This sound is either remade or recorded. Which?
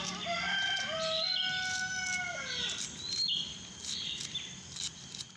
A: recorded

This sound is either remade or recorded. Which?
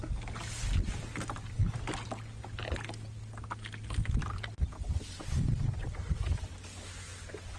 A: recorded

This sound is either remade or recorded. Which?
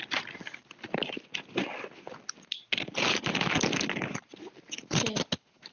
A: recorded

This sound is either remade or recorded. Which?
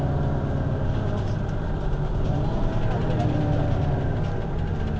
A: recorded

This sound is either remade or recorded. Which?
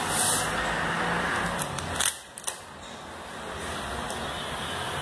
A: recorded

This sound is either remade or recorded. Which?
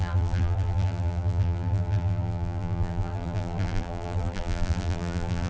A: remade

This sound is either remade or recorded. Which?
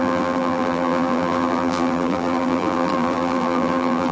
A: remade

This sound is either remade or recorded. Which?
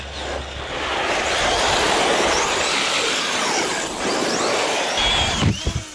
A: recorded